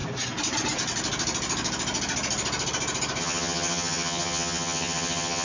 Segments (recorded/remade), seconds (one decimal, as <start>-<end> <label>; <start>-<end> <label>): 0.0-3.2 recorded; 3.2-5.4 remade